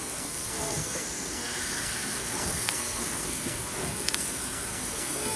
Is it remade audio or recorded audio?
remade